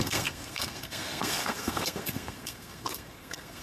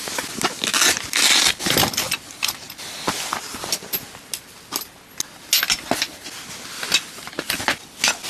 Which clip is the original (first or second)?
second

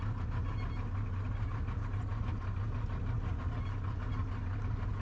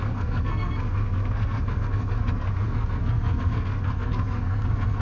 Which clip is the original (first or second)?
first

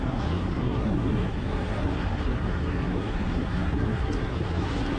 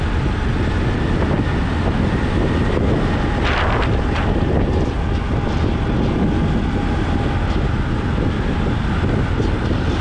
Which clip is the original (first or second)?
second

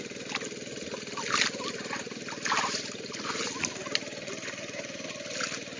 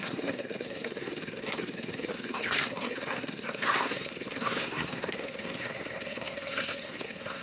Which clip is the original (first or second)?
first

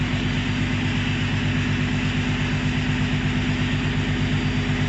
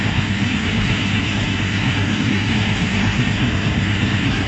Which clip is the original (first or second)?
first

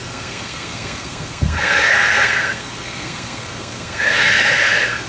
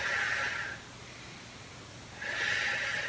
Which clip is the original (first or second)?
second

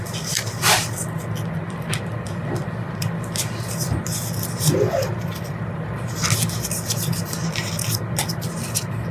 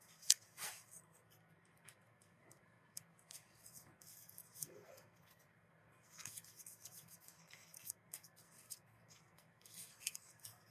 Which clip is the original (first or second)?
first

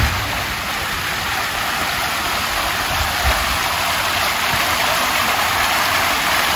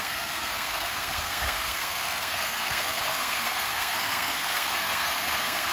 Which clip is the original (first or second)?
first